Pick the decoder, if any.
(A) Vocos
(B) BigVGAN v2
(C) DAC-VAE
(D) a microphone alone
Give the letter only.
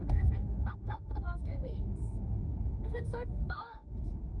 C